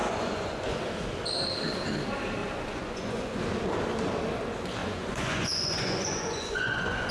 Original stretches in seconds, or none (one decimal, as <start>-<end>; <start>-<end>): 0.8-2.4; 3.4-4.8